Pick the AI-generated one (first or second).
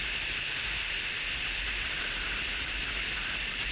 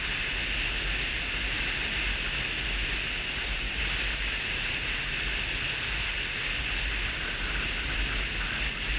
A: first